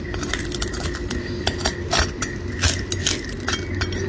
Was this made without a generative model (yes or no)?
yes